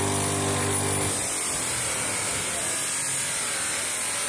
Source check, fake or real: real